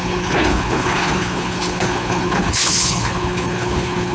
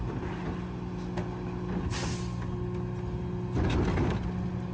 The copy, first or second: first